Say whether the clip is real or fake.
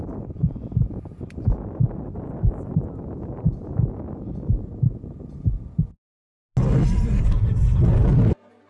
real